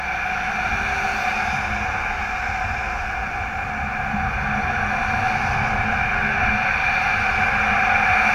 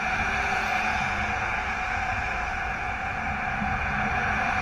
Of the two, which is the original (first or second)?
first